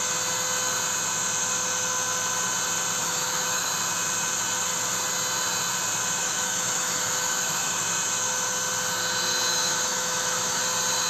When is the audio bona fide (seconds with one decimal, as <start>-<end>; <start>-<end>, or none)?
0.0-3.0; 3.7-6.2; 7.8-9.5; 10.6-11.1